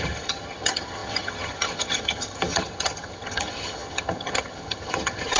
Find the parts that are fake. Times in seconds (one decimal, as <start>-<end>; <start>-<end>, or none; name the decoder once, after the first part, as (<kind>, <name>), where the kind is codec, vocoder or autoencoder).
0.0-5.4 (vocoder, HiFi-GAN)